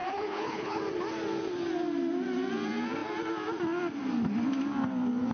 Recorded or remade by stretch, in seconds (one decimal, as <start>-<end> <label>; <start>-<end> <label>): 0.0-0.8 remade; 0.8-5.3 recorded